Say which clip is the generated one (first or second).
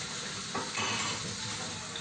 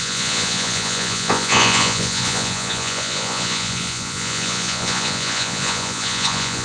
second